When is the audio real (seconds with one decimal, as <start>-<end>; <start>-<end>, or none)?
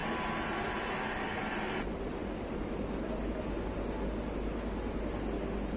0.0-5.8